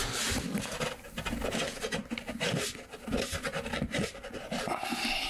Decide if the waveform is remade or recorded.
recorded